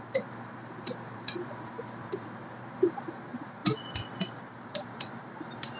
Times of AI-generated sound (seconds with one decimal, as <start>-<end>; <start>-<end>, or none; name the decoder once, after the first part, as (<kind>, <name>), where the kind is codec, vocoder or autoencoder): 0.0-3.6 (vocoder, BigVGAN v2); 4.2-5.8